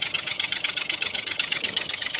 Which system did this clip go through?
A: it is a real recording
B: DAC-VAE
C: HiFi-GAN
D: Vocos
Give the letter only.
C